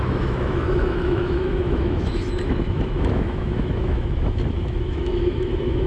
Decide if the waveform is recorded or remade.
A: remade